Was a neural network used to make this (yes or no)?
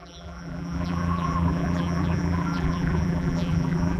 yes